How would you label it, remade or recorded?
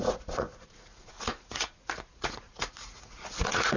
remade